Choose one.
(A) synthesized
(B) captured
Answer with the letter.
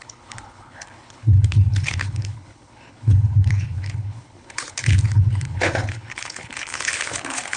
A